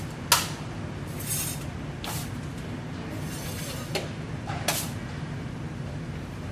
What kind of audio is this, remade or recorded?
recorded